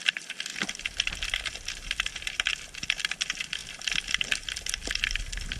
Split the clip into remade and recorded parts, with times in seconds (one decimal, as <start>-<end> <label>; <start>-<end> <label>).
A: 0.0-0.5 recorded; 0.5-1.1 remade; 1.1-5.6 recorded